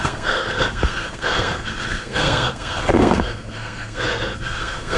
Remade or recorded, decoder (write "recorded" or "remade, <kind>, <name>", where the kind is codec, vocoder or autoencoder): remade, codec, SNAC